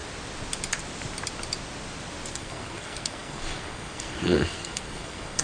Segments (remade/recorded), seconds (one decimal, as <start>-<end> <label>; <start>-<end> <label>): 0.0-2.3 recorded; 2.3-5.4 remade